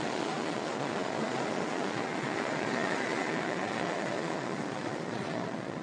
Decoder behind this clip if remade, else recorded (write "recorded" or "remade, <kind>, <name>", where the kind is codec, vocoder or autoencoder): remade, vocoder, Vocos